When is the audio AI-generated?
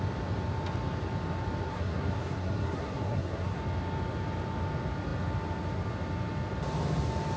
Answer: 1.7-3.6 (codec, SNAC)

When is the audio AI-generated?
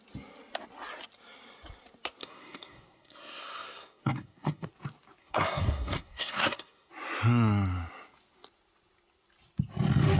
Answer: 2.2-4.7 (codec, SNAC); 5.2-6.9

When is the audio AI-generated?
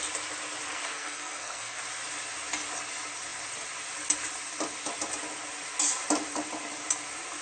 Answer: 0.7-1.8 (codec, SNAC)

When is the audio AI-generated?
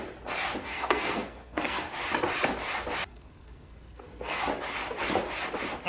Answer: 0.6-1.9 (codec, SNAC); 3.1-4.4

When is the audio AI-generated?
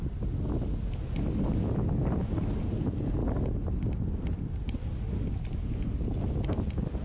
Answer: none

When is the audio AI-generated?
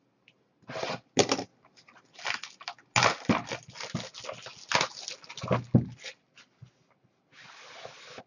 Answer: none